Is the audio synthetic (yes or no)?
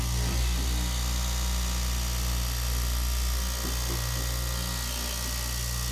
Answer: no